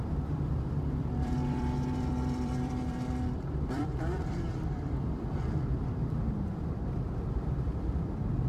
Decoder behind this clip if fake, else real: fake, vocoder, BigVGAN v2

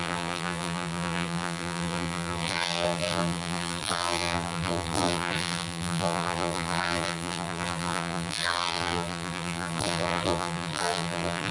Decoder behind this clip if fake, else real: fake, vocoder, BigVGAN v2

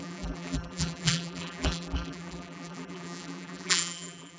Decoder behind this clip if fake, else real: fake, vocoder, BigVGAN v2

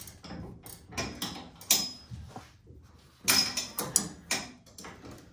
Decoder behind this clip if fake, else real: real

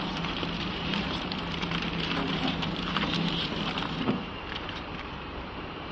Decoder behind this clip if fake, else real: fake, vocoder, BigVGAN v2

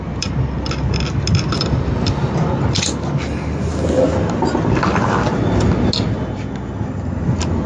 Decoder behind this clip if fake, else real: real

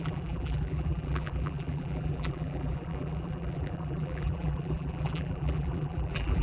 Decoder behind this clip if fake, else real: fake, vocoder, BigVGAN v2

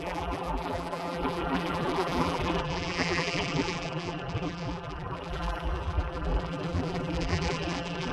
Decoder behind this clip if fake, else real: fake, vocoder, BigVGAN v2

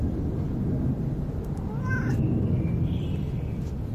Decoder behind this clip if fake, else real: real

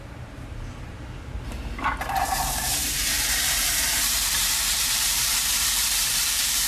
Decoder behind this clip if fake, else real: fake, vocoder, BigVGAN v2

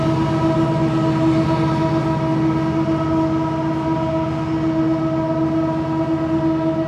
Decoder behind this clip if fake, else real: real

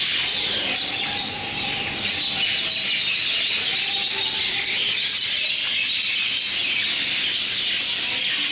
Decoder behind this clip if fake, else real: real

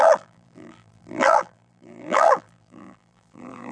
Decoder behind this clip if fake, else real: fake, vocoder, BigVGAN v2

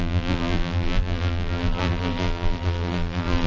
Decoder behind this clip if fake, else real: fake, vocoder, BigVGAN v2